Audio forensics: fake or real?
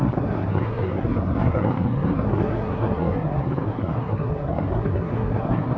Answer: fake